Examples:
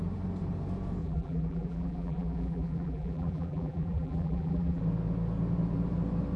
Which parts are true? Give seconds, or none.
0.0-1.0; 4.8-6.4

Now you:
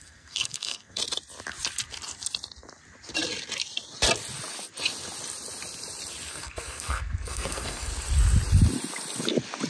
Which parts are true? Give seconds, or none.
1.0-6.3; 7.9-9.7